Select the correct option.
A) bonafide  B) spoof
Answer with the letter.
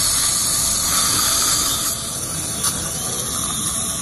A